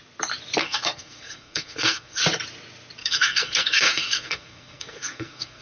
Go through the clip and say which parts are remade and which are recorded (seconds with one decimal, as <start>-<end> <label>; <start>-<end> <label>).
0.0-0.6 recorded; 0.6-2.2 remade; 2.2-3.0 recorded; 3.0-5.6 remade